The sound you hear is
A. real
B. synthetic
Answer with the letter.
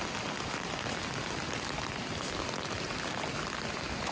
A